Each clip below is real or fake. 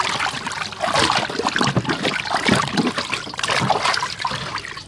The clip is real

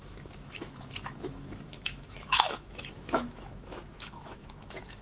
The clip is fake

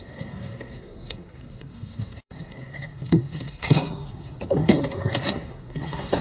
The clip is fake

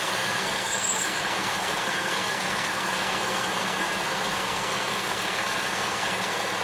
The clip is fake